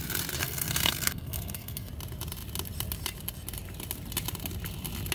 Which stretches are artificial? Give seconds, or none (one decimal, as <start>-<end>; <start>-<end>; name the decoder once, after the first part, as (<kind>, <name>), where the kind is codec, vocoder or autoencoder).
0.4-1.9 (codec, SNAC)

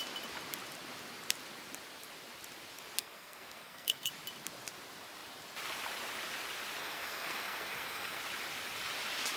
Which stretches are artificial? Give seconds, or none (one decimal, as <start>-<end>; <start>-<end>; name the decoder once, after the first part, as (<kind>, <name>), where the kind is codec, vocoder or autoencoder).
3.0-4.1 (codec, SNAC); 6.8-8.2

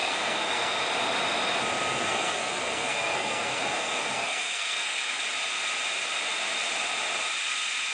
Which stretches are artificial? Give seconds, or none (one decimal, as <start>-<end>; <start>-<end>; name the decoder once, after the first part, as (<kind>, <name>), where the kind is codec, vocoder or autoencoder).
0.0-0.8 (codec, SNAC); 1.9-5.2